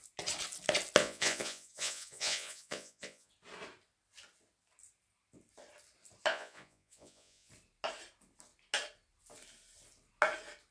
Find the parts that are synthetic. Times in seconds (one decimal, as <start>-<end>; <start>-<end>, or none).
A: 1.0-3.3; 6.3-7.5